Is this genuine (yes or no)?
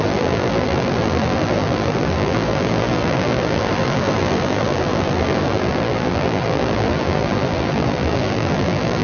no